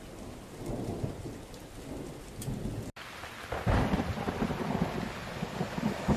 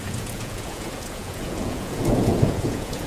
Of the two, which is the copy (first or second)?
second